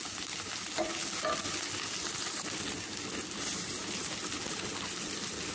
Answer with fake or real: real